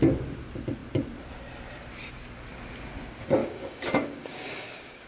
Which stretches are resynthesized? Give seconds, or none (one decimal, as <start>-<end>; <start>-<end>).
3.4-5.1